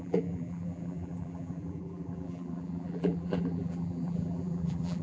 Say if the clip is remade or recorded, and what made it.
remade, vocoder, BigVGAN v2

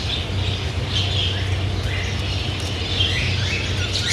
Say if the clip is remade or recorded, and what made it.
recorded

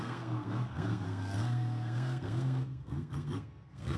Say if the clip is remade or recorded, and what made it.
remade, codec, SNAC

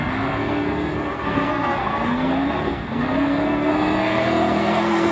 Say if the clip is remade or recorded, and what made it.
remade, codec, SNAC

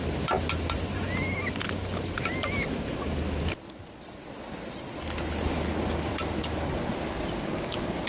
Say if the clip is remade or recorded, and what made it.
recorded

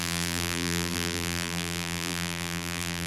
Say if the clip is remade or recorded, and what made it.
remade, vocoder, BigVGAN v2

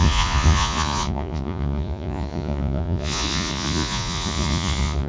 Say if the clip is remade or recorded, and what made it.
remade, vocoder, Vocos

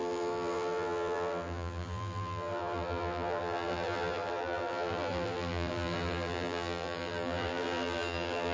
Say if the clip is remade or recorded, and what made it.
remade, vocoder, BigVGAN v2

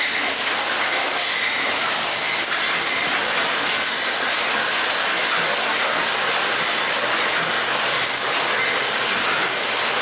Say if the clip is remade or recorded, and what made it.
recorded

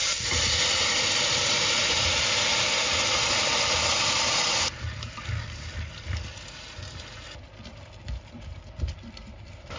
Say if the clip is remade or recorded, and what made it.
remade, vocoder, BigVGAN v2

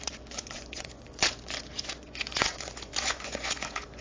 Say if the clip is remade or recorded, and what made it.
remade, vocoder, Vocos